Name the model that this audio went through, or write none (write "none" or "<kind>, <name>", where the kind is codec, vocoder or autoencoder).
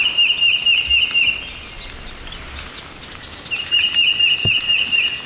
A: none